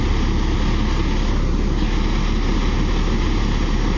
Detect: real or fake real